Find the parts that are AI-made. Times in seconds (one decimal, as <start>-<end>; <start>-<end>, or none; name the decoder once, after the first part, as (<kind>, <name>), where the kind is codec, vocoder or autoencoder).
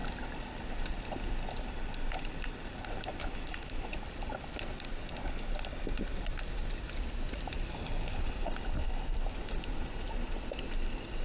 3.2-3.9 (autoencoder, DAC-VAE)